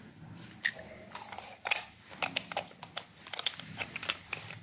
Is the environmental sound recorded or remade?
recorded